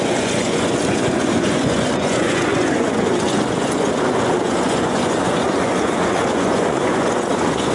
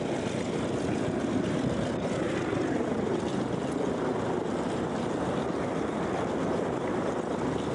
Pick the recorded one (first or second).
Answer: second